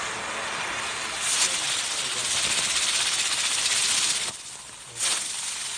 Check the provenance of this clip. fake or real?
real